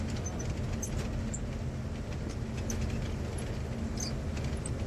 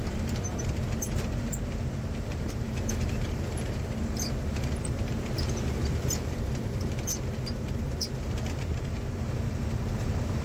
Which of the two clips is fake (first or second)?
second